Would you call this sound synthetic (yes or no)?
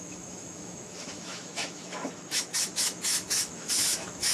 yes